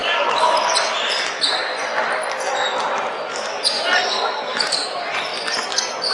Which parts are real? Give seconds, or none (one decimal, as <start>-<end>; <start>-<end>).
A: 1.6-2.8; 3.9-4.5; 5.3-6.1